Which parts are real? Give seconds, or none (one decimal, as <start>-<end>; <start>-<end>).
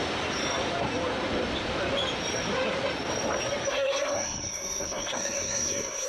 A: 0.0-3.7